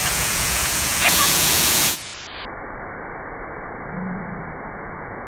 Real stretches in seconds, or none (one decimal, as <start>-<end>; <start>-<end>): 2.1-4.7